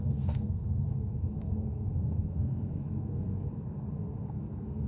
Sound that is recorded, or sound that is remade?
remade